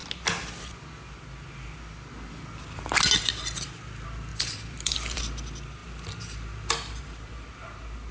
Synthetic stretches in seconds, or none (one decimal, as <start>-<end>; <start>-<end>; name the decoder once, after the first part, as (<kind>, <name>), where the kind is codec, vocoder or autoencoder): 4.3-5.2 (vocoder, BigVGAN v2)